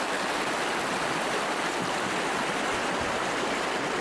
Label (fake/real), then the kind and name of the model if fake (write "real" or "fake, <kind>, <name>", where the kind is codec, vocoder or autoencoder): real